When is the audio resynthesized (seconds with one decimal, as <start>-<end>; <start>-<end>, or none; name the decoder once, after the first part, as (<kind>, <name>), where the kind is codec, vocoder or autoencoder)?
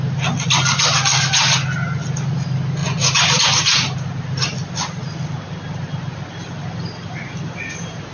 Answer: none